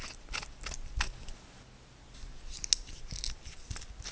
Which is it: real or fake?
real